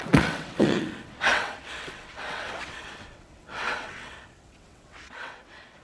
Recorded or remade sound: remade